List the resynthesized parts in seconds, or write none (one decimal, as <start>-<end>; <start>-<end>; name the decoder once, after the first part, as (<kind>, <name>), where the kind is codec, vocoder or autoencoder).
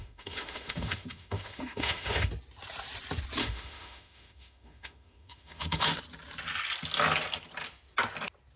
0.0-2.3 (autoencoder, DAC-VAE); 3.4-6.0